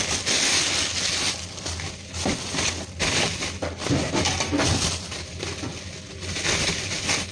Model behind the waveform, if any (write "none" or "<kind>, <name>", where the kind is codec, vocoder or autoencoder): none